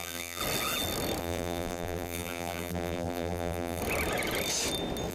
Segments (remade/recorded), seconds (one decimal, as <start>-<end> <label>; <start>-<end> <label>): 0.0-0.4 remade; 0.4-1.2 recorded; 1.2-3.8 remade; 3.8-5.1 recorded